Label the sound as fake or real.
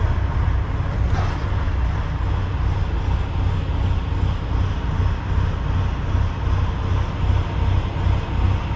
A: real